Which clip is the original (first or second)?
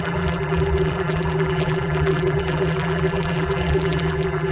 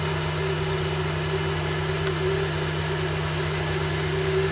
second